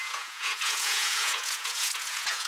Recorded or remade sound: remade